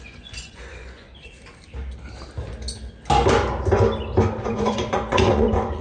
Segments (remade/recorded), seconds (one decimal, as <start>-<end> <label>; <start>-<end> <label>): 0.0-1.1 remade; 1.1-4.4 recorded; 4.4-5.8 remade